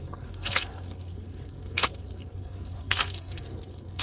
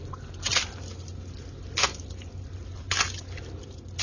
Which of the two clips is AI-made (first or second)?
first